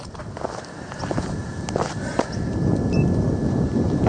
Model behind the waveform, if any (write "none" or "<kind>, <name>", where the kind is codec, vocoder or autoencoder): none